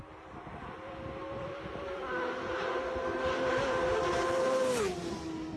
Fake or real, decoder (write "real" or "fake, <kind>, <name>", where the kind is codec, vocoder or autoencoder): real